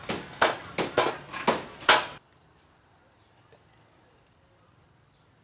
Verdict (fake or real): real